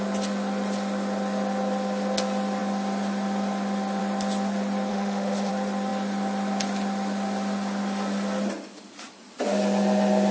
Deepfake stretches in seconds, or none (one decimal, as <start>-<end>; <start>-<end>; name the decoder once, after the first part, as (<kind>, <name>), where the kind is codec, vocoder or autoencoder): 4.9-5.5 (autoencoder, DAC-VAE)